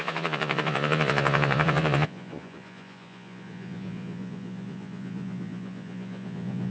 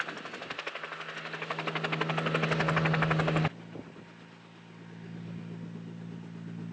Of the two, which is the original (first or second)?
second